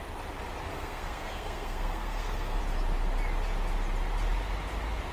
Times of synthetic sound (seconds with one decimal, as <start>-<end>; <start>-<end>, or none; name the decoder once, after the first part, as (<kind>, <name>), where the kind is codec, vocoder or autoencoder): 0.7-2.6 (codec, SNAC)